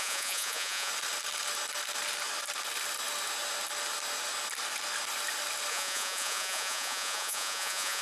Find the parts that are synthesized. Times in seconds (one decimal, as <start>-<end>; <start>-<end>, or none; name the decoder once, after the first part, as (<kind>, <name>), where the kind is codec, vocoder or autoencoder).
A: 0.0-0.9 (vocoder, Vocos); 5.7-8.0